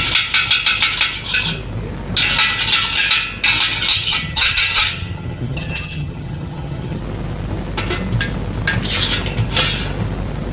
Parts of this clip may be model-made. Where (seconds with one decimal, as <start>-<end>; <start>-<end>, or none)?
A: 3.9-7.0